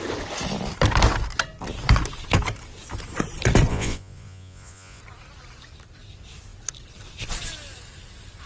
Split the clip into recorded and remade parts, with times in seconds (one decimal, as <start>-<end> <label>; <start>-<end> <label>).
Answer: 0.0-3.7 recorded; 3.7-5.0 remade; 5.0-8.5 recorded